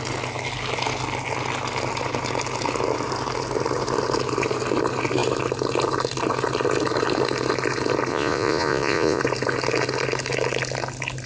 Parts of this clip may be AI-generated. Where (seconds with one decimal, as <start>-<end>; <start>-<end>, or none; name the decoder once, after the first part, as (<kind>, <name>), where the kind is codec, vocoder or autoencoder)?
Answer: 8.1-9.2 (vocoder, Vocos)